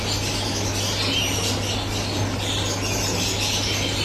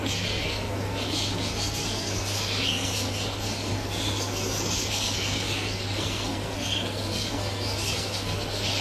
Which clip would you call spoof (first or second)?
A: second